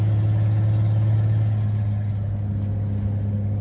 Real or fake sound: real